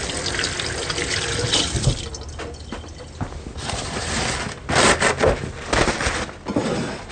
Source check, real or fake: real